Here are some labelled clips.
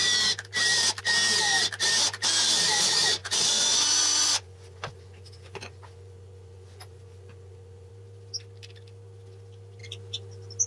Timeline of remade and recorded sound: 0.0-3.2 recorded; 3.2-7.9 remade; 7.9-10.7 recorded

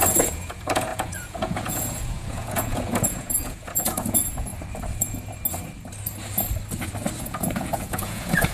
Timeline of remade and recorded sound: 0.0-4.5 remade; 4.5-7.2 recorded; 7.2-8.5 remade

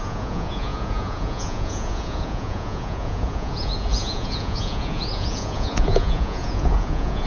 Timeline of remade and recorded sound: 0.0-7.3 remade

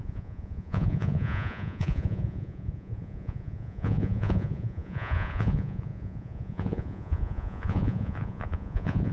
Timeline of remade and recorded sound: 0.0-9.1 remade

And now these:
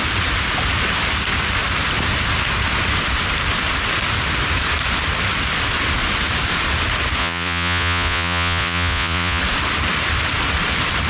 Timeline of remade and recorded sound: 0.0-7.2 recorded; 7.2-9.4 remade; 9.4-11.1 recorded

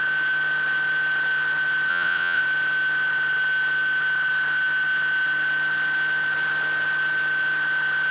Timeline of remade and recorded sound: 0.0-1.9 recorded; 1.9-2.4 remade; 2.4-8.1 recorded